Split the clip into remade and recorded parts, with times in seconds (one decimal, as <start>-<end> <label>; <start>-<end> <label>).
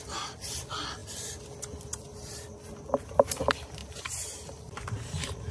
0.0-3.8 recorded; 3.8-5.5 remade